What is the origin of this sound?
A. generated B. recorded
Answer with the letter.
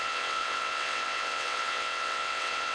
A